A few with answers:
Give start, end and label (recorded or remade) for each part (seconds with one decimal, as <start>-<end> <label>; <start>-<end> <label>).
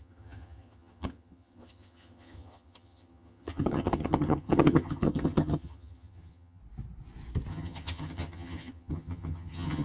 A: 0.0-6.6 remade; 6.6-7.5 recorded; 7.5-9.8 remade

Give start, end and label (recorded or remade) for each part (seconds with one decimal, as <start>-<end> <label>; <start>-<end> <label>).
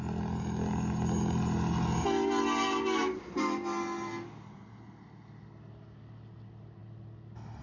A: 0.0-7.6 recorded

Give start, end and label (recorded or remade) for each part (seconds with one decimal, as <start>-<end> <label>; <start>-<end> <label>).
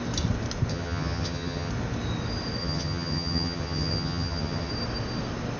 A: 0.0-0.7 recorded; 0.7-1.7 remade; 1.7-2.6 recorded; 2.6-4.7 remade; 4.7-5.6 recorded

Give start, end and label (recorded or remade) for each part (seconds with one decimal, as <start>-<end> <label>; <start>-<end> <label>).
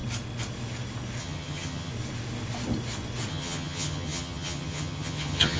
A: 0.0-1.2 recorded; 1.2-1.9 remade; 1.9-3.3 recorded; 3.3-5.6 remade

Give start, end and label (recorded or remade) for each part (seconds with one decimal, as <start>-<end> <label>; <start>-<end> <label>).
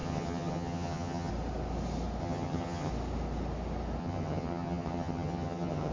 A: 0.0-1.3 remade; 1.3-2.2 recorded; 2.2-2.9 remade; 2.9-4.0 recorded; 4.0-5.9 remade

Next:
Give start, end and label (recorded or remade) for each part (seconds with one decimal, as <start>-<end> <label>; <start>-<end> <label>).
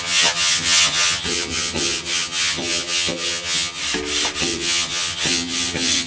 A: 0.0-3.8 remade; 3.8-4.4 recorded; 4.4-6.1 remade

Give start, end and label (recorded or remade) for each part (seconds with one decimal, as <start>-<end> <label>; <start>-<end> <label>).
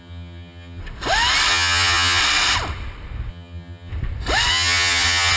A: 0.0-0.8 remade; 0.8-1.5 recorded; 1.5-2.2 remade; 2.2-3.3 recorded; 3.3-3.9 remade; 3.9-4.5 recorded; 4.5-5.4 remade